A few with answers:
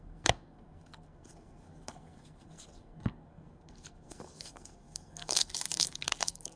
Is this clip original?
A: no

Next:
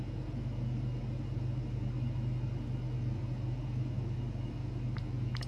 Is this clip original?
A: yes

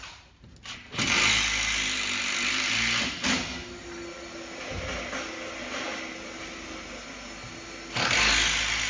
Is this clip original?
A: yes